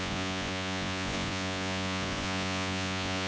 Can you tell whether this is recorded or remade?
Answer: remade